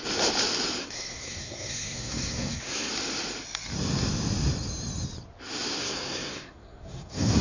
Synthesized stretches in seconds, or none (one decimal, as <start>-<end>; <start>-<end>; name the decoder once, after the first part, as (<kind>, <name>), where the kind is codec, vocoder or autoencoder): 0.8-2.9 (codec, SNAC); 5.8-7.4